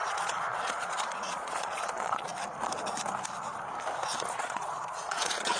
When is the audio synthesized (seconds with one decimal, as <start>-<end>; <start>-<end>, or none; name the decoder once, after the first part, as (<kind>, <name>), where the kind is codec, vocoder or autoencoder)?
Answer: 0.0-2.3 (vocoder, Vocos); 4.3-5.6